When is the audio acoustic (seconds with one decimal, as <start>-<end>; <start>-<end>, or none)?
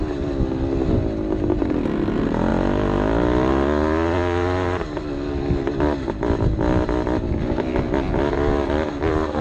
0.0-9.4